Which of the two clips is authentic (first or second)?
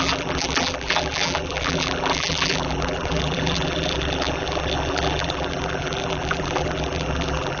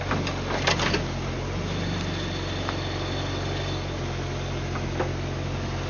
second